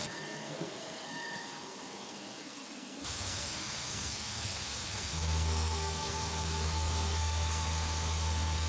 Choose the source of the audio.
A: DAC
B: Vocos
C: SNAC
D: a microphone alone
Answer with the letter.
C